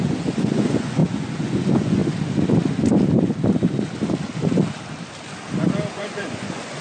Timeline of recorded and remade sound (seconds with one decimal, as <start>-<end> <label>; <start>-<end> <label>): 0.0-2.0 remade; 2.0-5.9 recorded; 5.9-6.8 remade